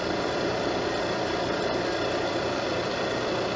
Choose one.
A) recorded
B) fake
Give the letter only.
A